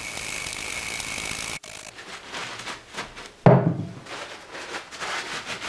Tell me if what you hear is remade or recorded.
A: recorded